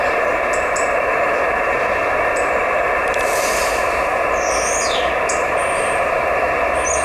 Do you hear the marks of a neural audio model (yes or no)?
yes